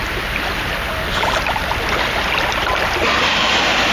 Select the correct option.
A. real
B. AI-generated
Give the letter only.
A